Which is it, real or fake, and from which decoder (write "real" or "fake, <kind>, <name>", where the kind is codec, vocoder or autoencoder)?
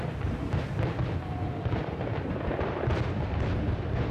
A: real